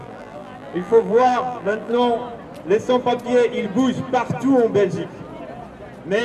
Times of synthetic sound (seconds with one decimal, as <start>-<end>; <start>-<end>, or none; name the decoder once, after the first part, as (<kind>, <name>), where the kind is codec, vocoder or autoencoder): 0.0-1.9 (vocoder, BigVGAN v2)